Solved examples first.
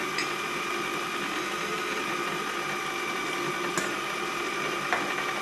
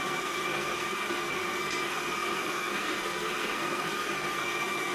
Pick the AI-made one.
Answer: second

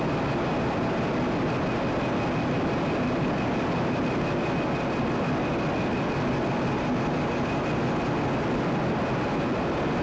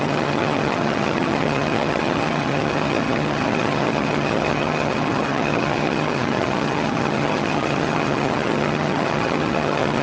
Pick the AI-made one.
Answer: second